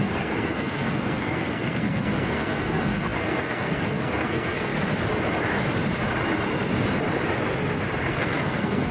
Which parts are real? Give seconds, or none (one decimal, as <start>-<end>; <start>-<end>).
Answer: 4.7-8.0